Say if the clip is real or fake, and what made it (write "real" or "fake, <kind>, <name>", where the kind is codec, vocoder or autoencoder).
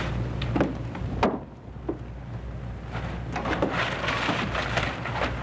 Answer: real